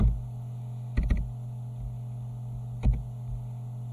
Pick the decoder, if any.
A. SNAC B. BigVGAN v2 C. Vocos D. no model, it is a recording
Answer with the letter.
D